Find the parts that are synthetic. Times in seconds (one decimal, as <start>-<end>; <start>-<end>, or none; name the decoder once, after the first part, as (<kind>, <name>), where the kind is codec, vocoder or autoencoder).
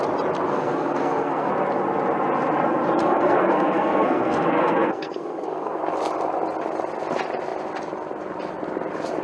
0.5-1.5 (codec, SNAC); 3.0-5.8